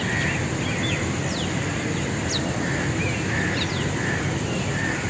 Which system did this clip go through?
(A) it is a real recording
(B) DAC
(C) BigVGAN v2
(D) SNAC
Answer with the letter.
A